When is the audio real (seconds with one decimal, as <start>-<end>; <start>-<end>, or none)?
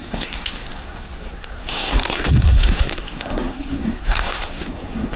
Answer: none